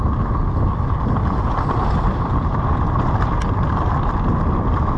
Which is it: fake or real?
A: real